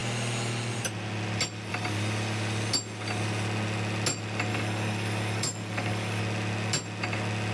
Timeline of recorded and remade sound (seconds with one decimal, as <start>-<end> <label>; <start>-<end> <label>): 0.0-4.5 recorded; 4.5-6.2 remade; 6.2-7.5 recorded